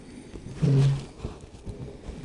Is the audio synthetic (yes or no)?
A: no